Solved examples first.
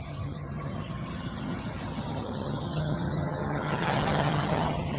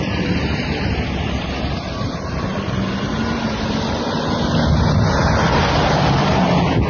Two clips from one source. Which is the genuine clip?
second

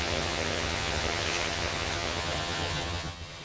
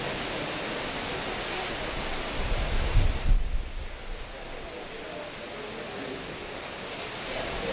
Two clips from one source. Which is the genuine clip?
second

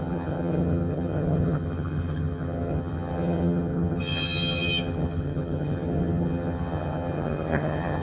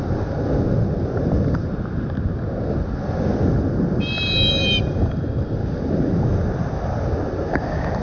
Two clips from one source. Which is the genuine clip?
second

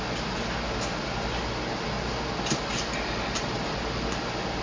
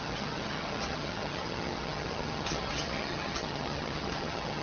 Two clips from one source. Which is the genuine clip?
first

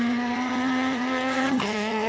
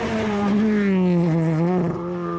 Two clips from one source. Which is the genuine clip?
second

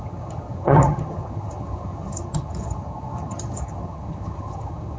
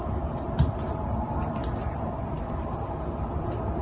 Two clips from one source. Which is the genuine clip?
second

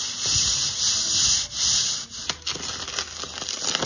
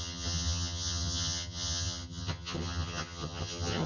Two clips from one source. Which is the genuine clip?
first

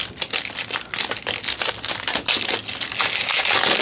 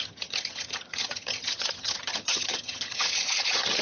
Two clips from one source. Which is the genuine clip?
first